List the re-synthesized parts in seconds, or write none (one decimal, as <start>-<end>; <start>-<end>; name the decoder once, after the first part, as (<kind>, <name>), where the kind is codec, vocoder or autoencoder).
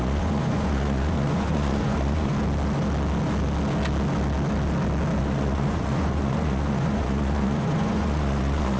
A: 0.0-2.3 (vocoder, Vocos); 5.2-8.8